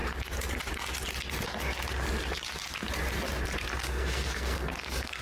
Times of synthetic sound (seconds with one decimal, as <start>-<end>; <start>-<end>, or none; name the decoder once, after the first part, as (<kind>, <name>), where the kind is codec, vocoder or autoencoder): 3.8-5.2 (codec, SNAC)